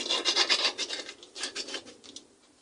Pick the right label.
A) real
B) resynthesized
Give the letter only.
A